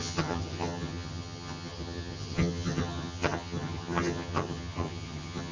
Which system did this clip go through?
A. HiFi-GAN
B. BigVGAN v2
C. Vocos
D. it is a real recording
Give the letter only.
A